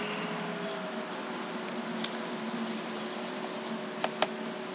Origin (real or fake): real